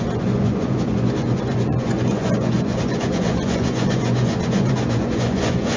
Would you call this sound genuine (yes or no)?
no